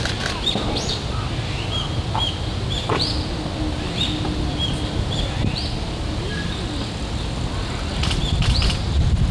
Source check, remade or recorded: recorded